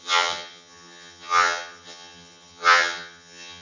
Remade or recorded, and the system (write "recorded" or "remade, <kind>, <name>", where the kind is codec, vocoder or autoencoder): remade, vocoder, HiFi-GAN